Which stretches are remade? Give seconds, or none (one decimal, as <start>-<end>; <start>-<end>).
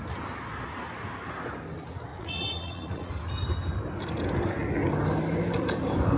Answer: 2.1-3.1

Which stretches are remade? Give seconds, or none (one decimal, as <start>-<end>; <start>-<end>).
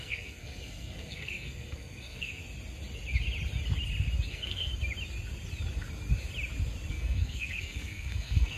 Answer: 0.0-2.4; 4.3-4.7; 6.9-8.6